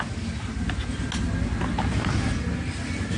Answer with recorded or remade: recorded